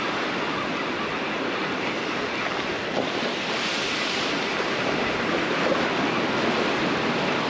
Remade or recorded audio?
recorded